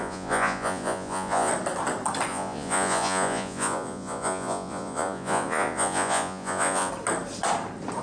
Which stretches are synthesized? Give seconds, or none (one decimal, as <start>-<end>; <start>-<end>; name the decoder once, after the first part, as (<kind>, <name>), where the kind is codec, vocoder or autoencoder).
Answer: 0.0-1.5 (vocoder, Vocos); 2.3-6.9